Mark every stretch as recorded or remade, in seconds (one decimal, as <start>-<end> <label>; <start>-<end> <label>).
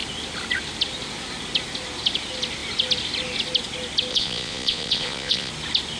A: 0.0-4.1 recorded; 4.1-5.5 remade; 5.5-6.0 recorded